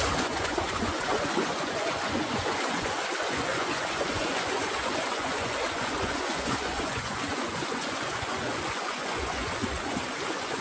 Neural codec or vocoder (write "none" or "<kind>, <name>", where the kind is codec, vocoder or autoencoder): vocoder, Vocos